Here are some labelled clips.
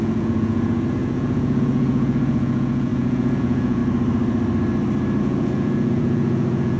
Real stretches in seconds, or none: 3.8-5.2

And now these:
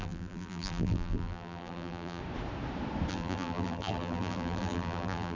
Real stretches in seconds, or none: 2.2-3.1

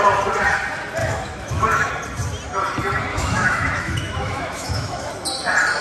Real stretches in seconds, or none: 0.0-1.0; 1.9-3.1; 5.1-5.8

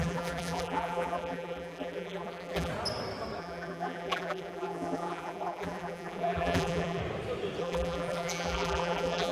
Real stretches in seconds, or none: 2.7-3.4; 7.0-7.6